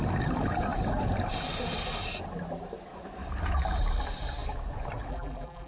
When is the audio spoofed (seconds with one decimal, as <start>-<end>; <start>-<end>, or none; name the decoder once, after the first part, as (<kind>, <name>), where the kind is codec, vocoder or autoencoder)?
5.1-5.7 (vocoder, BigVGAN v2)